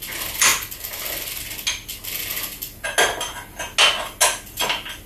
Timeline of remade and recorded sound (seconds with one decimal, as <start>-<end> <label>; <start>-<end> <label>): 0.0-5.1 recorded